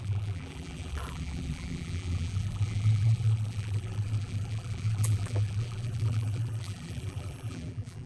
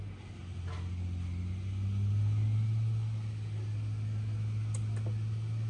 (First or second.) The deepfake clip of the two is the first